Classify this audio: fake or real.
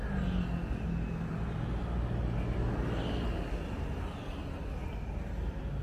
real